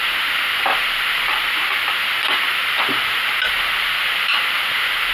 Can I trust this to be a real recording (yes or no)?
yes